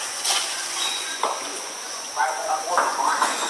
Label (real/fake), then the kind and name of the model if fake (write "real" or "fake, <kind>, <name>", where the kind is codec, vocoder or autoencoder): fake, vocoder, Vocos